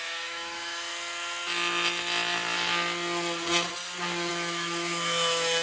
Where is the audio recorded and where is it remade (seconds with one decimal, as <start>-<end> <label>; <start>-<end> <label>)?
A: 0.0-0.9 remade; 0.9-4.3 recorded; 4.3-5.6 remade

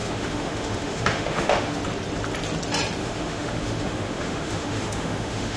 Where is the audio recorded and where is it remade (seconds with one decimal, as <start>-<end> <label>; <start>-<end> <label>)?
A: 0.0-1.8 remade; 1.8-3.0 recorded; 3.0-5.6 remade

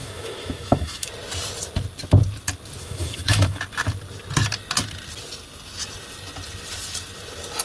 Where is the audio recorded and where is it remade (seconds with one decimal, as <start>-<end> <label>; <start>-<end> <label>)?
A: 0.0-1.1 remade; 1.1-2.8 recorded; 2.8-3.6 remade; 3.6-7.6 recorded

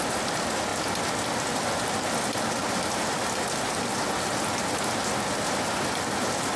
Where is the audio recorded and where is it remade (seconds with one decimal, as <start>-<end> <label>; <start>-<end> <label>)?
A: 0.0-6.6 recorded

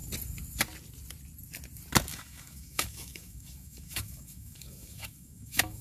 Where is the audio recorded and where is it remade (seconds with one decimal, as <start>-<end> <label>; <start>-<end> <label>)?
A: 0.0-2.1 recorded; 2.1-5.8 remade

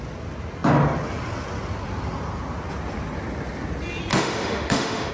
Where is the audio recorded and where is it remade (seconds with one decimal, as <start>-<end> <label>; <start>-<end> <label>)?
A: 0.0-4.1 recorded; 4.1-5.1 remade